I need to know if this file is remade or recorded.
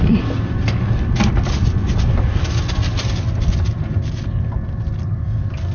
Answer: recorded